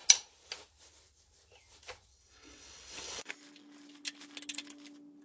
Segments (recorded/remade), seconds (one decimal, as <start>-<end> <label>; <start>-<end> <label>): 0.0-2.1 recorded; 2.1-3.3 remade; 3.3-5.2 recorded